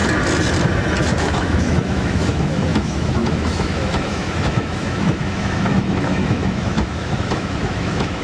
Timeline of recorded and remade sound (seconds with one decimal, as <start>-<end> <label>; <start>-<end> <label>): 0.0-1.1 recorded; 1.1-8.2 remade